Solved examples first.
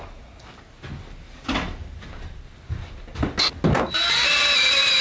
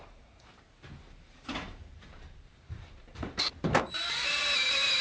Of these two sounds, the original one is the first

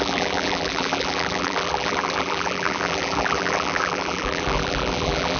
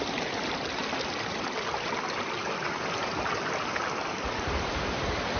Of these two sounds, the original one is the second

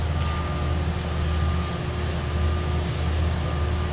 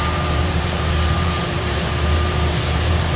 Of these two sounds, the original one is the first